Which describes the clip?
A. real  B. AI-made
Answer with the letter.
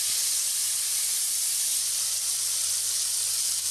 A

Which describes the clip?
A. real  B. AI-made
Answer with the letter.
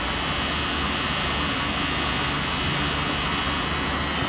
A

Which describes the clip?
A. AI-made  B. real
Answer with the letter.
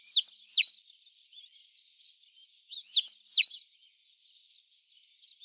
B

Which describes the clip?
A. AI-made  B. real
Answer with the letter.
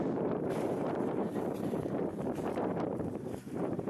A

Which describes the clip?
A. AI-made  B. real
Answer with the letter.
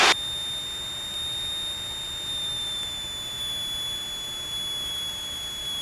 B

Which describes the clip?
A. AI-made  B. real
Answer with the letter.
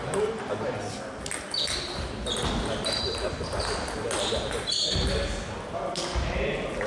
B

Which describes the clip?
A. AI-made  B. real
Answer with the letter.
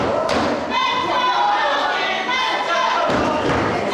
B